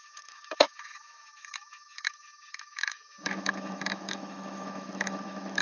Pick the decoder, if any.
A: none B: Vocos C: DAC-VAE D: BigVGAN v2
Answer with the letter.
C